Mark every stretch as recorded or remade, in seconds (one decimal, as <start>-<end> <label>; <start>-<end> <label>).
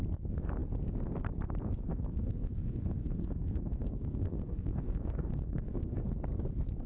0.0-1.9 recorded; 1.9-6.0 remade; 6.0-6.9 recorded